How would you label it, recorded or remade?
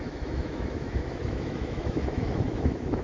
remade